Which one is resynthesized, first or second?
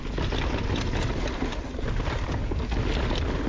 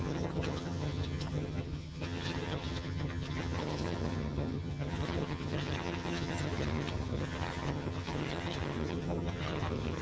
second